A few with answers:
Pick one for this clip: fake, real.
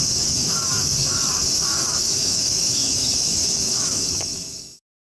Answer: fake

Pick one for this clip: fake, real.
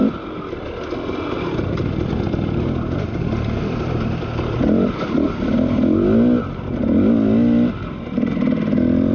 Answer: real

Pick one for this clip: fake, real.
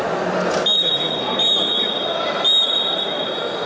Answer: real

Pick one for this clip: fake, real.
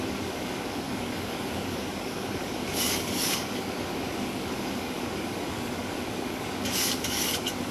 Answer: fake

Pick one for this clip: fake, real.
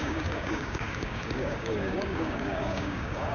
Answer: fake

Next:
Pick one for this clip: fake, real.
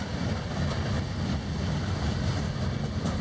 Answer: real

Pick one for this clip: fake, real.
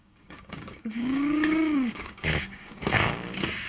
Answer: fake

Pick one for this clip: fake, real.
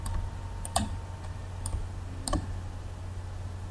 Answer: real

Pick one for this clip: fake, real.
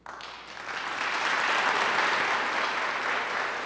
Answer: real